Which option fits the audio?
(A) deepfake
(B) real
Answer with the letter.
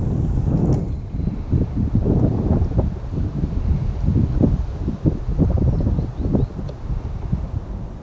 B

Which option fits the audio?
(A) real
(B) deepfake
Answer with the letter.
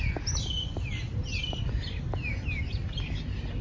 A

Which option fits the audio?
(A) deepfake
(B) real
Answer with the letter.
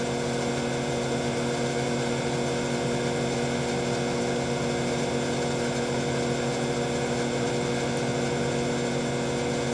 B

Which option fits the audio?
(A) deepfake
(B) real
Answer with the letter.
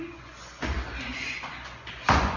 A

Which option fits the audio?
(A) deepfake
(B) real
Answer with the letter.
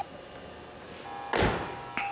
B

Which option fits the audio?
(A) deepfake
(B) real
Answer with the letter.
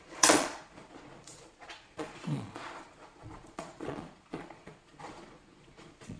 A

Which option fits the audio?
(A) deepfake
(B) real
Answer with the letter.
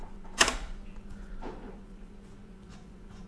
A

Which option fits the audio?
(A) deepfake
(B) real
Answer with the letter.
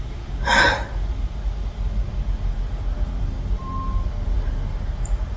B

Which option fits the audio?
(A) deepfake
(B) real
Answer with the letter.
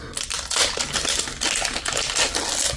B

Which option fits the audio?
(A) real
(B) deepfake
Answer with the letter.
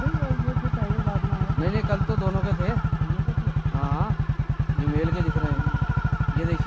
A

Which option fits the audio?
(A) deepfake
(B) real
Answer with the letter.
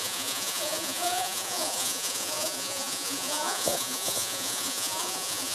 A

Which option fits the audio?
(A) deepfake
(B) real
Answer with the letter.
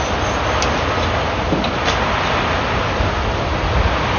B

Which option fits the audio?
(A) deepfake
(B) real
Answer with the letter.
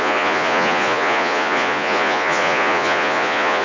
A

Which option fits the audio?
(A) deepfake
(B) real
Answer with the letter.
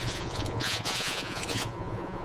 A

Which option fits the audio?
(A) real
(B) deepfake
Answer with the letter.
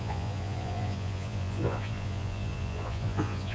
B